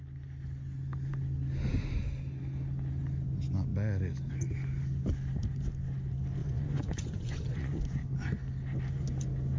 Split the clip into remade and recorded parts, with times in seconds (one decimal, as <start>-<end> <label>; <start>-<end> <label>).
0.0-6.4 recorded; 6.4-7.8 remade; 7.8-9.6 recorded